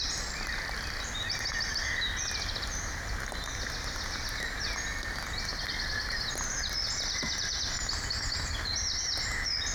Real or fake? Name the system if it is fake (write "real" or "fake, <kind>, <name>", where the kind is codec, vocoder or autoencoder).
real